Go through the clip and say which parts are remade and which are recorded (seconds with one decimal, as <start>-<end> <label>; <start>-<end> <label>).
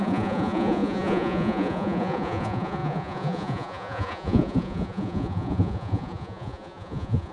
0.0-7.3 remade